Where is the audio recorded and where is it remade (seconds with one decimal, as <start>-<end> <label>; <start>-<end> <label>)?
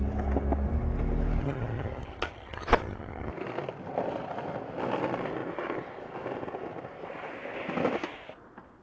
0.0-1.4 recorded; 1.4-3.3 remade; 3.3-8.8 recorded